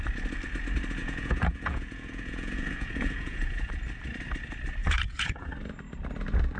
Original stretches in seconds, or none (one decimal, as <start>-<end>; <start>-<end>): 0.0-1.0; 3.7-4.8; 5.5-6.6